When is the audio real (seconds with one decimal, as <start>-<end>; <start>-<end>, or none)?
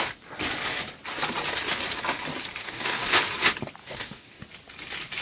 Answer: 0.0-2.6; 3.2-3.8; 4.4-5.2